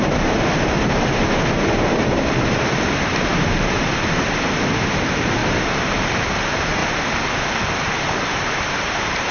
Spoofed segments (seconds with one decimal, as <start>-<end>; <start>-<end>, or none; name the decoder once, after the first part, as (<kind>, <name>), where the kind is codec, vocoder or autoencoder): 0.0-5.4 (vocoder, BigVGAN v2); 6.0-6.8; 7.6-9.3